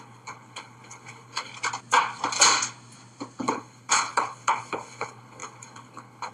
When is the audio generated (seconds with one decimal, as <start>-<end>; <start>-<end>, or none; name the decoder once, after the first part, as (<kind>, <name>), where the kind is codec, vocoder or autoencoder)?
0.0-1.5 (codec, HILCodec); 3.4-6.3